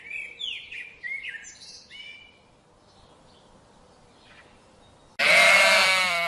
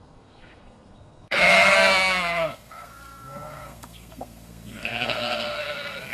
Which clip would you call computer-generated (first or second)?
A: second